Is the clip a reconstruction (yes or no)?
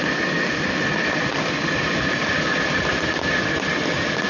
no